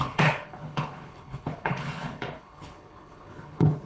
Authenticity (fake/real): fake